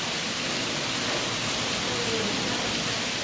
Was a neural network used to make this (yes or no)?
no